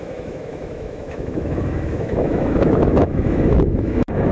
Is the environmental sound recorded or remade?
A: remade